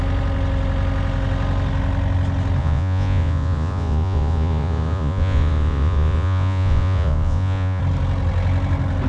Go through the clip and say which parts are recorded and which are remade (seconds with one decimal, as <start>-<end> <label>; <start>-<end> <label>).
0.0-2.6 recorded; 2.6-7.8 remade; 7.8-9.1 recorded